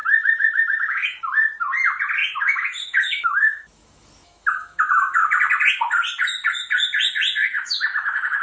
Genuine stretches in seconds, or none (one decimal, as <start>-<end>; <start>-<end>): 1.2-2.2; 5.4-7.4